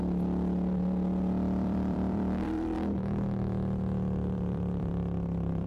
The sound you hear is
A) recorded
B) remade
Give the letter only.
B